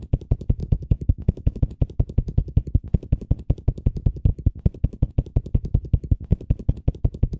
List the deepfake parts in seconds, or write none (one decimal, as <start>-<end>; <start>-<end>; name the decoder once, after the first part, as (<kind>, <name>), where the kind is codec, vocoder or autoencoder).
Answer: 0.6-1.6 (codec, DAC)